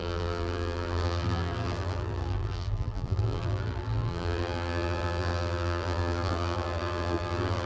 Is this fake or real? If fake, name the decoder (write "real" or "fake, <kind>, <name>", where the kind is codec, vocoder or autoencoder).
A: fake, vocoder, BigVGAN v2